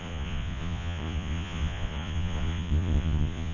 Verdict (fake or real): fake